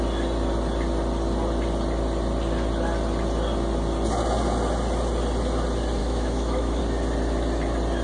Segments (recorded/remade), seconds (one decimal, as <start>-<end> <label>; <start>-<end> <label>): 0.0-6.0 recorded; 6.0-6.8 remade; 6.8-8.0 recorded